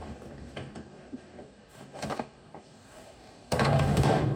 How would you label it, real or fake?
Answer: fake